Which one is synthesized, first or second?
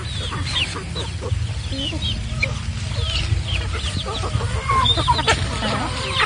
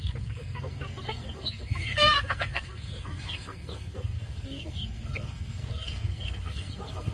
second